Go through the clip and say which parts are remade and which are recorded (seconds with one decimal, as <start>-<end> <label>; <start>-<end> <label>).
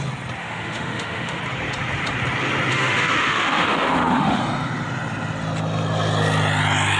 0.0-0.4 recorded; 0.4-1.4 remade; 1.4-2.7 recorded; 2.7-4.4 remade; 4.4-7.0 recorded